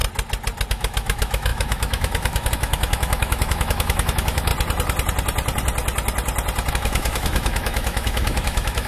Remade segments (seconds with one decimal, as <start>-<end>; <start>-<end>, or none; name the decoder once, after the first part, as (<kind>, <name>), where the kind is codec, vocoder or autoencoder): 0.7-4.5 (autoencoder, DAC-VAE); 6.7-8.9